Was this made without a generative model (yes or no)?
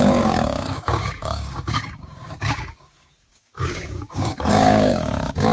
no